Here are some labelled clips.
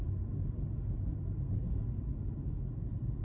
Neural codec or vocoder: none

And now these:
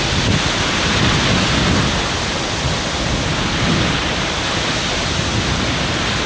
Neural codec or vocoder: none